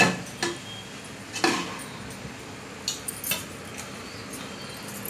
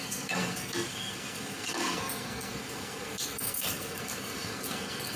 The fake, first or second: second